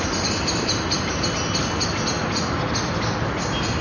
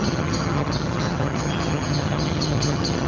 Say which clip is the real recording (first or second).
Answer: first